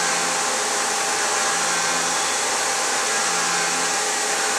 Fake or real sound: fake